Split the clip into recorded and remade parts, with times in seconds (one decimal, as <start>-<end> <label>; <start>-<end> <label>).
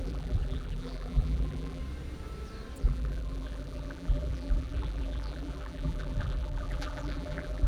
0.0-1.8 remade; 1.8-2.8 recorded; 2.8-7.7 remade